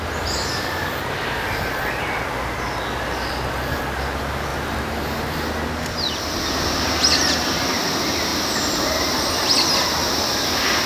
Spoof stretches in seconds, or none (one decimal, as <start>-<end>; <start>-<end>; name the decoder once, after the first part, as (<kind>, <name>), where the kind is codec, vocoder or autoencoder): 4.5-5.8 (vocoder, BigVGAN v2); 8.3-9.3